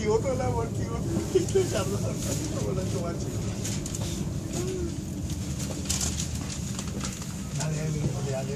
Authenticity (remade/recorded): recorded